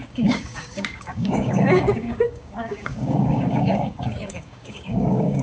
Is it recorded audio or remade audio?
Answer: remade